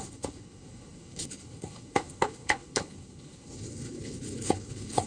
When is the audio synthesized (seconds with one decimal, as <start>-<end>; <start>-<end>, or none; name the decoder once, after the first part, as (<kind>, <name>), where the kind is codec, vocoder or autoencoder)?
0.0-5.1 (codec, HILCodec)